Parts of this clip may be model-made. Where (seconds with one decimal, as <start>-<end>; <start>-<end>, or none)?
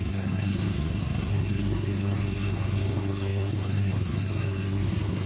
0.0-5.3